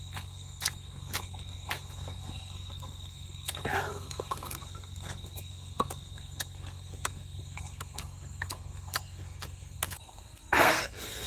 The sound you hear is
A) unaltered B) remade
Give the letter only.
B